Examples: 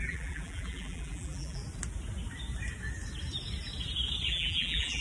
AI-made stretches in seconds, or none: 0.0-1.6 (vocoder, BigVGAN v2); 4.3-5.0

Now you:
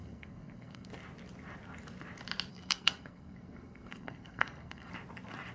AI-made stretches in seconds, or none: 0.0-0.9 (codec, SNAC); 2.5-4.9

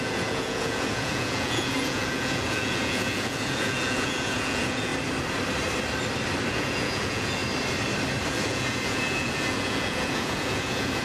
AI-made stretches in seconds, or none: 0.0-4.9 (vocoder, Vocos); 6.5-7.4; 8.3-11.0

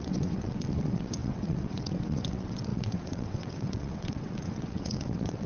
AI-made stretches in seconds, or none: 0.0-5.5 (vocoder, WaveNeXt)

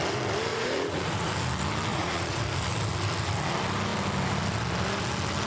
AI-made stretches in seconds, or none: 0.5-1.3 (vocoder, Vocos); 1.9-2.4

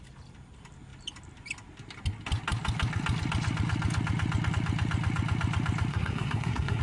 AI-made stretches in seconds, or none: 5.9-6.8 (codec, SNAC)

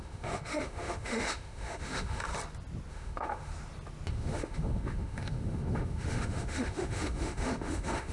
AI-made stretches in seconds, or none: 0.0-2.3 (autoencoder, DAC-VAE); 2.9-3.5; 4.1-8.1